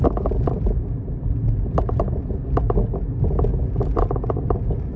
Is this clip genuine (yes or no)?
yes